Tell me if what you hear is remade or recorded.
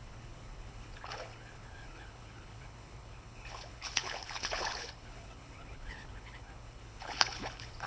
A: remade